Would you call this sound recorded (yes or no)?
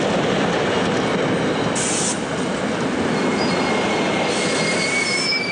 yes